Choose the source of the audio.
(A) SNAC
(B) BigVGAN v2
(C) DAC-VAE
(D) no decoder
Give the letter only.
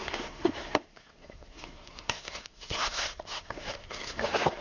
A